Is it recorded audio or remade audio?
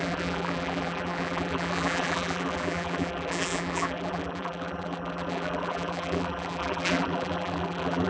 remade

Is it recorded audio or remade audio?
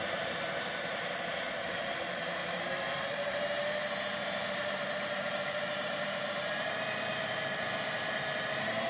remade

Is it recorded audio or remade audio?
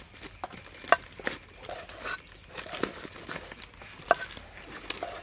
recorded